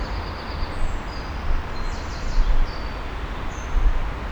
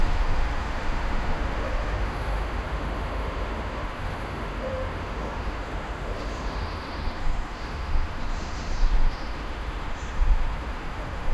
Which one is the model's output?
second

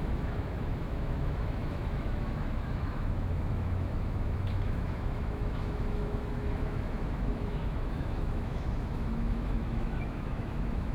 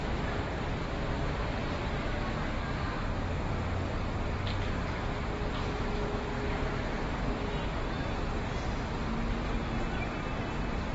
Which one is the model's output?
first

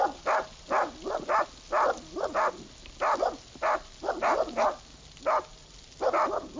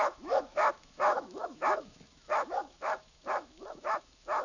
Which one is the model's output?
second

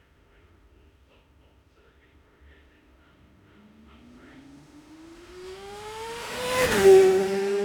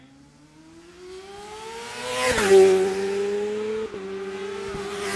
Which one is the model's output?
first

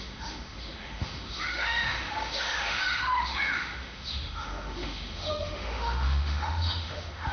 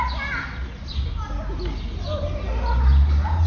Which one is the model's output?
first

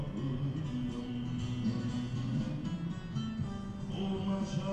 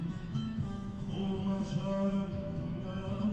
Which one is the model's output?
second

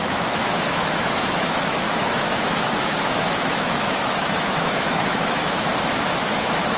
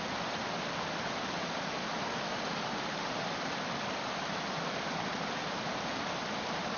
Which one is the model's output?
first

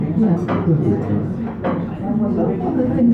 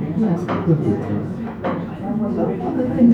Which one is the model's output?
second